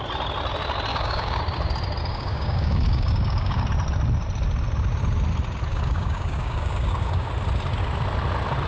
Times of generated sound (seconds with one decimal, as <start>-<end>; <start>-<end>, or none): 0.9-1.4; 2.1-3.6; 5.7-7.3